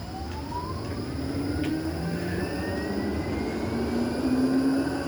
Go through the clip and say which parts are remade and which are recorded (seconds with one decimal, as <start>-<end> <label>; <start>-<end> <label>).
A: 0.0-1.7 recorded; 1.7-2.4 remade; 2.4-5.1 recorded